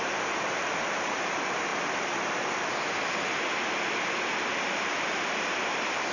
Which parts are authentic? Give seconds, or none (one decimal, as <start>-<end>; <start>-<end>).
1.7-5.4